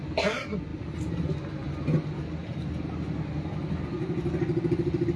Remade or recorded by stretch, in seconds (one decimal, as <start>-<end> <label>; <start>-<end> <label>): 0.0-5.2 recorded